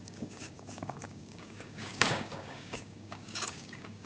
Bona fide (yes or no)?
no